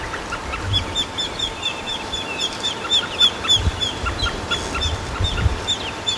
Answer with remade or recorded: recorded